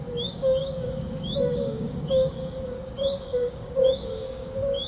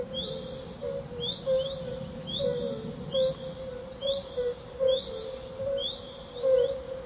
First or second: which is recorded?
second